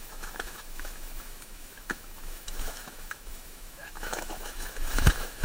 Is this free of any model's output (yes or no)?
no